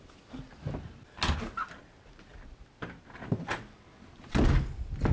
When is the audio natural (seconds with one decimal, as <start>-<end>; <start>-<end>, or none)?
0.0-5.1